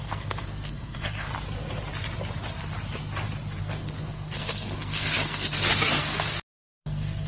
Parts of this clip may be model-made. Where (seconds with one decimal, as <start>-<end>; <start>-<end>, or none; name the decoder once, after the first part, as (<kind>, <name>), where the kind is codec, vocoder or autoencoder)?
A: 0.0-1.3 (codec, SNAC); 3.6-6.3; 6.8-7.3